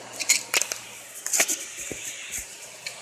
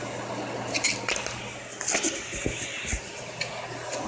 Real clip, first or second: second